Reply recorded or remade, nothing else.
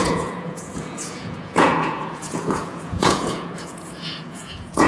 remade